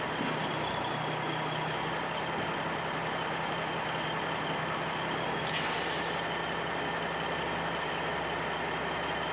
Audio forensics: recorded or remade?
recorded